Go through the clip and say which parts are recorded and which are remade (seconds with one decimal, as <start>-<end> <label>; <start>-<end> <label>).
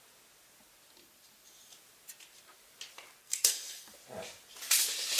0.0-3.2 recorded; 3.2-3.9 remade; 3.9-5.2 recorded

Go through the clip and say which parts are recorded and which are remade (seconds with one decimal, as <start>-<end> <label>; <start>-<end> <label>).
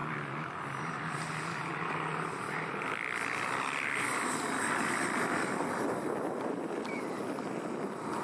0.0-8.2 recorded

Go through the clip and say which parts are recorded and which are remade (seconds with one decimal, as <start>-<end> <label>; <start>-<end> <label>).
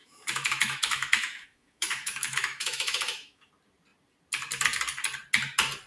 0.0-3.5 remade; 3.5-5.9 recorded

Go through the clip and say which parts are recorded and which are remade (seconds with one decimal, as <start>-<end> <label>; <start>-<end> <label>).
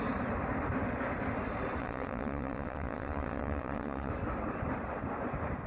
0.0-1.8 recorded; 1.8-4.1 remade; 4.1-5.7 recorded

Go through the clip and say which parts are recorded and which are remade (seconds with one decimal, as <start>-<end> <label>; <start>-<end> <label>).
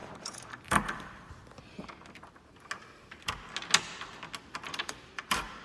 0.0-1.4 remade; 1.4-4.7 recorded; 4.7-5.6 remade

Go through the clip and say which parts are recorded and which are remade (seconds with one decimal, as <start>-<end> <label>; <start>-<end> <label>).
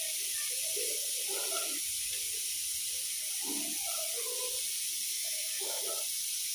0.0-5.1 recorded; 5.1-5.8 remade; 5.8-6.5 recorded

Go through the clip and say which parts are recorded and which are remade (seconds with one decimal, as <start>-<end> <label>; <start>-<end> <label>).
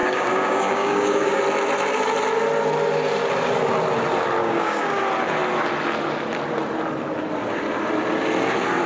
0.0-1.4 remade; 1.4-4.4 recorded; 4.4-5.0 remade; 5.0-8.9 recorded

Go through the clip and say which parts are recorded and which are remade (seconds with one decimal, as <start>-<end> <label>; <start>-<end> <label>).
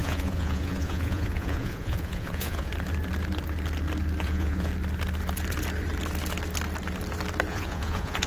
0.0-2.7 remade; 2.7-4.2 recorded; 4.2-4.7 remade; 4.7-7.5 recorded; 7.5-8.3 remade